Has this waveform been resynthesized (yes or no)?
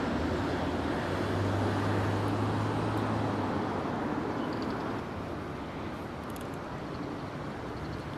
no